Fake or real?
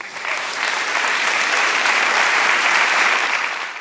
fake